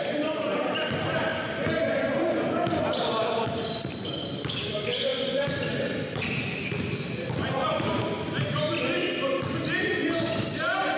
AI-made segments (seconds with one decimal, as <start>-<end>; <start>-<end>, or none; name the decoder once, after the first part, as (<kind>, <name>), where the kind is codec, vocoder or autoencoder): none